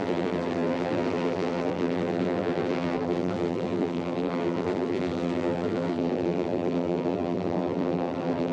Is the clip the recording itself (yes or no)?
no